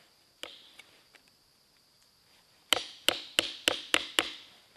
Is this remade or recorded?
recorded